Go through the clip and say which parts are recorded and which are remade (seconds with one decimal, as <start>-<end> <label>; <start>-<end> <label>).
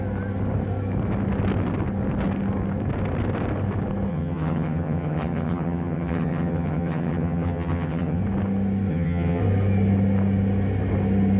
0.0-4.1 recorded; 4.1-8.2 remade; 8.2-8.9 recorded; 8.9-9.4 remade; 9.4-11.4 recorded